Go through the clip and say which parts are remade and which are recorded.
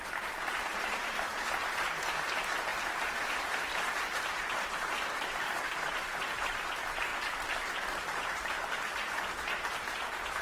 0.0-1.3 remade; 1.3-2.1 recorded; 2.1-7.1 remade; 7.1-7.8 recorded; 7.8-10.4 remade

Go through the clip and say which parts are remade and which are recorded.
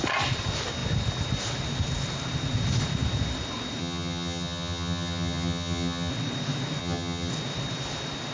0.0-3.8 recorded; 3.8-6.1 remade; 6.1-6.8 recorded; 6.8-7.3 remade; 7.3-8.3 recorded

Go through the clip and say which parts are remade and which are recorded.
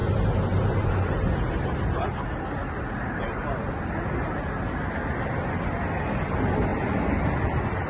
0.0-2.0 remade; 2.0-2.6 recorded; 2.6-3.9 remade; 3.9-6.7 recorded; 6.7-7.9 remade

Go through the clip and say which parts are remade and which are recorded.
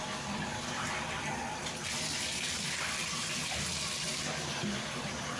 0.0-0.5 recorded; 0.5-3.3 remade; 3.3-4.1 recorded; 4.1-5.0 remade; 5.0-5.4 recorded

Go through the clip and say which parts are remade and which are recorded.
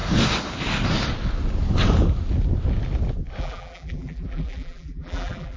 0.0-3.4 recorded; 3.4-5.6 remade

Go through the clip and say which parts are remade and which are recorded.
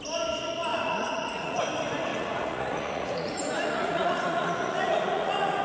0.0-0.7 recorded; 0.7-1.6 remade; 1.6-2.1 recorded; 2.1-5.6 remade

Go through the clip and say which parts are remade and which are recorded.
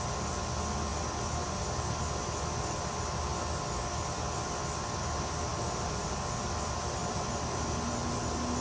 0.0-5.5 recorded; 5.5-6.2 remade; 6.2-7.0 recorded; 7.0-7.6 remade; 7.6-8.6 recorded